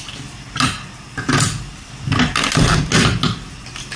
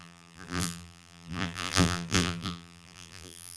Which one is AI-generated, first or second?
second